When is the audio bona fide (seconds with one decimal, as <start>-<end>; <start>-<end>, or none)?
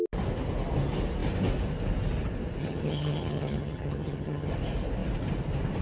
0.0-2.6; 4.5-5.8